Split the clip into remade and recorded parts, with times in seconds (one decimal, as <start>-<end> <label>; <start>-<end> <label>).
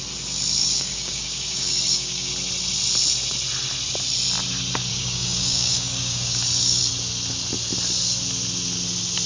0.0-0.6 recorded; 0.6-2.3 remade; 2.3-4.9 recorded; 4.9-6.8 remade; 6.8-9.3 recorded